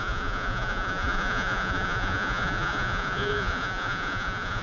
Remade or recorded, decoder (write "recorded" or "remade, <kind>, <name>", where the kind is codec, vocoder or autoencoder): remade, vocoder, Vocos